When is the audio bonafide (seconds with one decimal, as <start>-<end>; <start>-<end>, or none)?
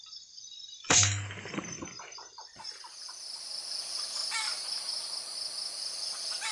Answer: 4.2-5.9